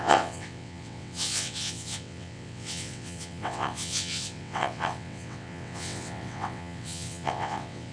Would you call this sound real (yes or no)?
no